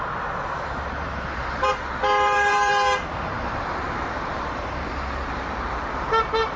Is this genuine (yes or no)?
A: no